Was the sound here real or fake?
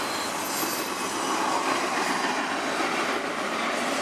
real